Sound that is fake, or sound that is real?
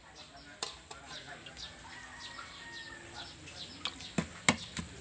real